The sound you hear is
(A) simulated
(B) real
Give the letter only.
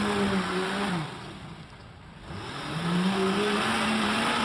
B